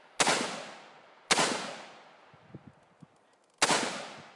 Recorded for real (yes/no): yes